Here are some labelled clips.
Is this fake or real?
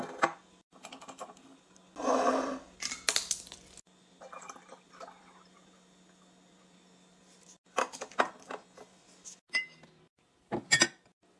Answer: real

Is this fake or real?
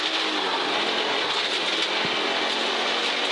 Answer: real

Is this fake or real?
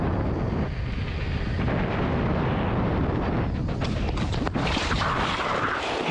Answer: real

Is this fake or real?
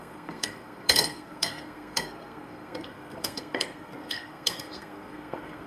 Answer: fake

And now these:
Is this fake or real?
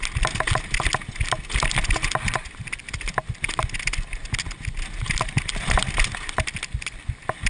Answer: real